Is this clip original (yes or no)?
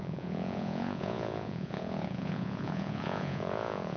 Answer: no